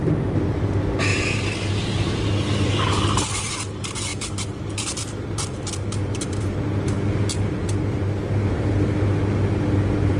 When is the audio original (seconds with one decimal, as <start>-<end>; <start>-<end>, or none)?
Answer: 0.0-4.1; 5.1-10.2